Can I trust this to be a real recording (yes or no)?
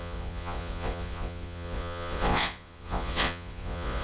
no